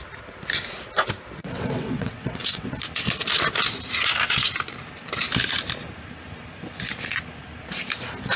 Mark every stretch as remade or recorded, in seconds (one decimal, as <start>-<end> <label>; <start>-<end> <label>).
0.0-1.4 recorded; 1.4-2.7 remade; 2.7-8.4 recorded

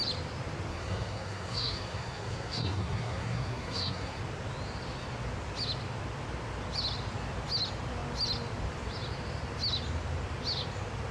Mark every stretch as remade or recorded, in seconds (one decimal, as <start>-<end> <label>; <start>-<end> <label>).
0.0-0.7 recorded; 0.7-4.2 remade; 4.2-11.1 recorded

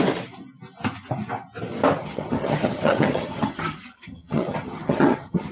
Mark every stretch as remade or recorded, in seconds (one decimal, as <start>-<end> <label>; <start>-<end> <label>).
0.0-2.0 recorded; 2.0-5.5 remade